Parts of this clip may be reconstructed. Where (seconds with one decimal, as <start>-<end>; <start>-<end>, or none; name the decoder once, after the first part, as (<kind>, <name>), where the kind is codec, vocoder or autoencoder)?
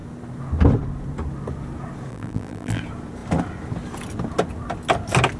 2.1-2.8 (vocoder, BigVGAN v2)